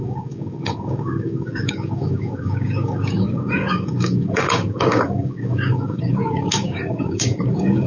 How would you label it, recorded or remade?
remade